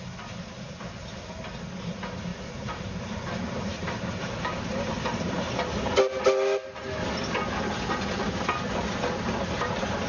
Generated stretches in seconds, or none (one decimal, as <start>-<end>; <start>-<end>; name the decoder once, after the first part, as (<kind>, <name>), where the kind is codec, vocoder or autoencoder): 2.3-5.5 (vocoder, BigVGAN v2)